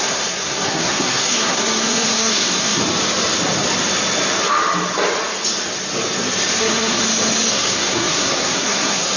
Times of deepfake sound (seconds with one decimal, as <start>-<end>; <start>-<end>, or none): 0.0-2.8; 6.6-7.0; 7.5-9.2